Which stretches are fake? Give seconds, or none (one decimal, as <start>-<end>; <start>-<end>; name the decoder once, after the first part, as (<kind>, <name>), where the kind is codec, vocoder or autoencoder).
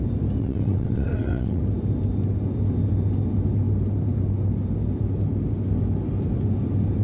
0.4-1.6 (vocoder, WaveNeXt)